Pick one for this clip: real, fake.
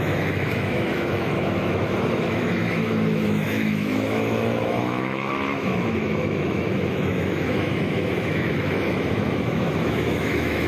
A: fake